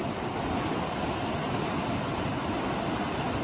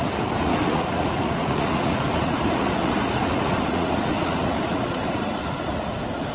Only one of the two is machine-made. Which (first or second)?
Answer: second